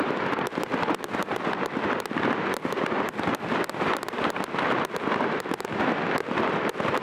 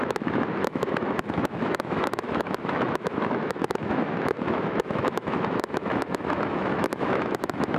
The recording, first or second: first